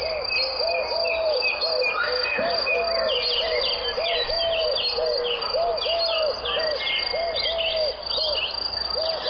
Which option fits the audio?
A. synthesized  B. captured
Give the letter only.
B